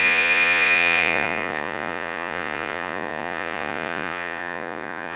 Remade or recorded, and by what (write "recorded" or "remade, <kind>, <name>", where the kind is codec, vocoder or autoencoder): remade, vocoder, Vocos